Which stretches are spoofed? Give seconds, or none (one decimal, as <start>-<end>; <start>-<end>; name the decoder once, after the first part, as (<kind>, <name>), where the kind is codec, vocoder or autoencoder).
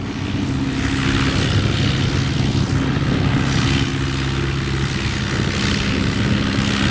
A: none